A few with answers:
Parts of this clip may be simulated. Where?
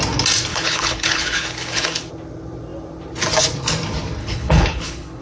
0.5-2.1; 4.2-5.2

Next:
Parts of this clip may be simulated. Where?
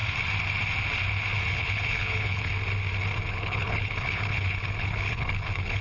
1.5-2.5; 3.3-5.8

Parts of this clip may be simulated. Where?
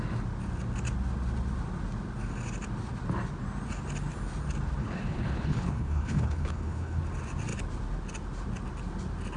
4.8-7.0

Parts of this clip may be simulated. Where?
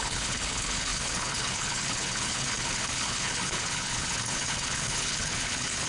0.0-5.9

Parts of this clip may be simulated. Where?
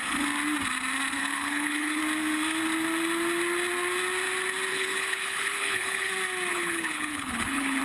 1.2-2.0; 4.7-6.1; 6.5-7.8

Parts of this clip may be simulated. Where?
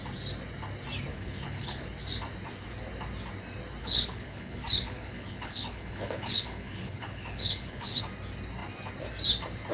1.1-1.8; 3.8-8.0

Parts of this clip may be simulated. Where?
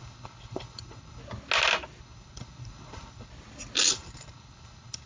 0.0-1.2; 2.0-3.3; 3.9-5.1